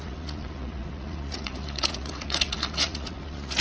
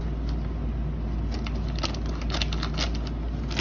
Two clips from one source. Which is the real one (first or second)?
second